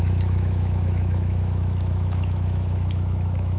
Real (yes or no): no